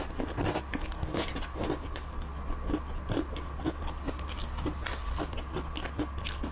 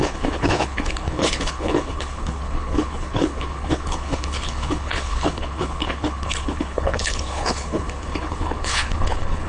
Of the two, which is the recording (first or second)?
first